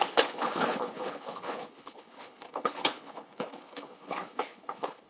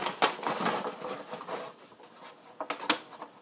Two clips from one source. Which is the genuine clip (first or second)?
second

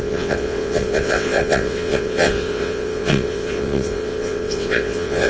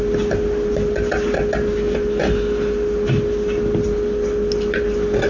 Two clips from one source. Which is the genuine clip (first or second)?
second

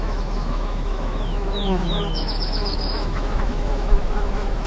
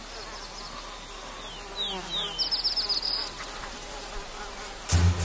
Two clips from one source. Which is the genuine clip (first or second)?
second